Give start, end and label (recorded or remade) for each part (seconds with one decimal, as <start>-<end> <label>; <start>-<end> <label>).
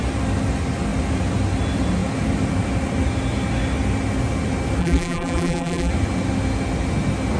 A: 0.0-4.8 recorded; 4.8-5.9 remade; 5.9-7.4 recorded